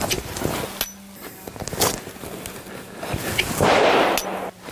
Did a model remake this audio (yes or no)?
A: no